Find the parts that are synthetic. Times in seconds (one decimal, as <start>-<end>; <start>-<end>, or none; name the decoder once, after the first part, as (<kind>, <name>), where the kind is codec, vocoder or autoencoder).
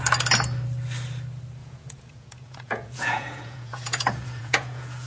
1.6-5.1 (vocoder, Vocos)